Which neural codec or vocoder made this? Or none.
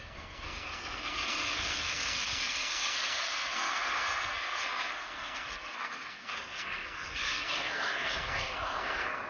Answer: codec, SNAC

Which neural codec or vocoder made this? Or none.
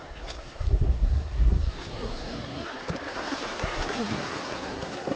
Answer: codec, SNAC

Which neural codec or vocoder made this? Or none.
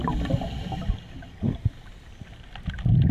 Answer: none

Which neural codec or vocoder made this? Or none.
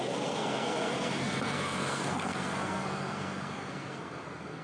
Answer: codec, SNAC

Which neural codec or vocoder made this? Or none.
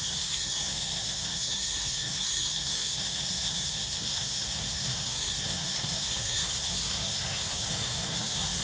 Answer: codec, SNAC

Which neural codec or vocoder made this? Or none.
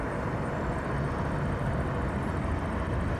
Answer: none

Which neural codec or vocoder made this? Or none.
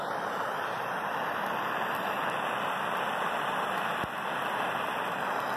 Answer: none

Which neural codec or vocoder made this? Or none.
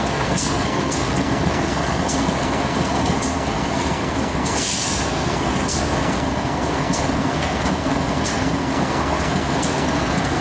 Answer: codec, SNAC